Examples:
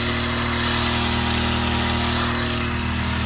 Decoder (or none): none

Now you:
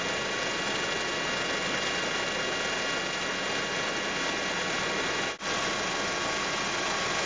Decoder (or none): none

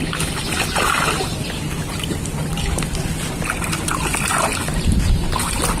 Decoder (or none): none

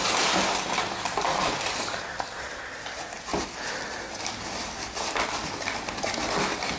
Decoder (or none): none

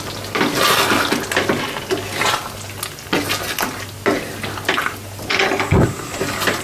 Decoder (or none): none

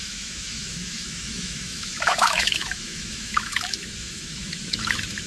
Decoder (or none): autoencoder, DAC-VAE